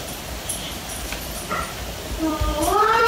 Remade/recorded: remade